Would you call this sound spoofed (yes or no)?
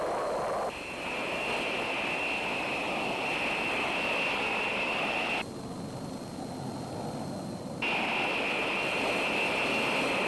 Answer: no